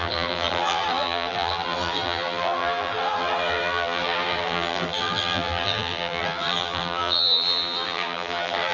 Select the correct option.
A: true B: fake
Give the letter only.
B